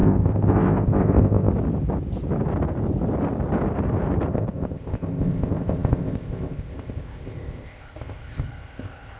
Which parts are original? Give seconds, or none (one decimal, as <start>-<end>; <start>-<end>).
1.5-4.3